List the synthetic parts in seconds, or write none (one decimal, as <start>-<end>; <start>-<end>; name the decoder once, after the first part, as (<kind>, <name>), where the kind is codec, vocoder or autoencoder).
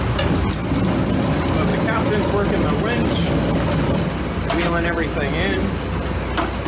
none